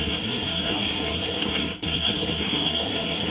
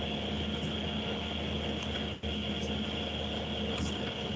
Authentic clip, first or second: second